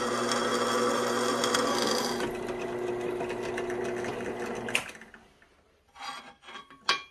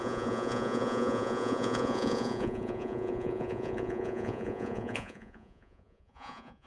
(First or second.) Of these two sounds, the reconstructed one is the second